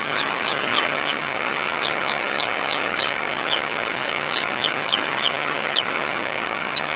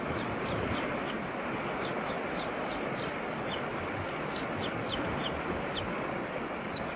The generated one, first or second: first